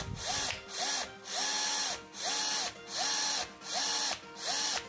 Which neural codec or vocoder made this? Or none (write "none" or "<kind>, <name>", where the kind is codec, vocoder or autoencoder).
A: none